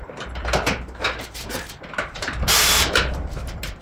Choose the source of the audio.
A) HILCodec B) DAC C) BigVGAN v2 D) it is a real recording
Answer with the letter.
C